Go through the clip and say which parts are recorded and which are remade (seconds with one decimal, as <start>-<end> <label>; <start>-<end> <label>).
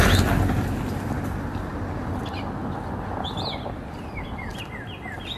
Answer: 0.0-5.4 recorded